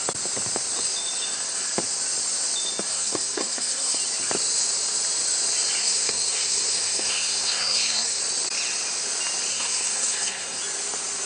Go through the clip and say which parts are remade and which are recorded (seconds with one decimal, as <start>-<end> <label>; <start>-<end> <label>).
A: 0.0-2.9 recorded; 2.9-4.0 remade; 4.0-5.8 recorded; 5.8-8.2 remade; 8.2-9.5 recorded; 9.5-10.6 remade; 10.6-11.3 recorded